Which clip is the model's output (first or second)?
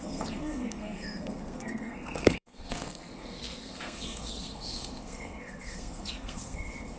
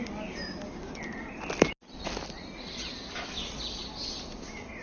first